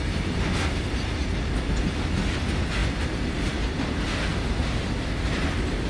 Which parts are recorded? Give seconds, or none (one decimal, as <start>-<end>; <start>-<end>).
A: 0.0-5.9